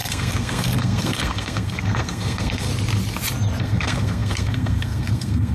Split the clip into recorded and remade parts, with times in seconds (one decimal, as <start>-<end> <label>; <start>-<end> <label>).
0.0-2.7 remade; 2.7-3.6 recorded; 3.6-5.5 remade